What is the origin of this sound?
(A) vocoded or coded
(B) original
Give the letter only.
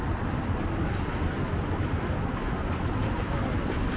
B